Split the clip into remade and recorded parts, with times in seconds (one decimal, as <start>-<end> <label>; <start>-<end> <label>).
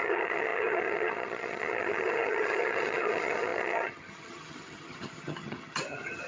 0.0-6.3 remade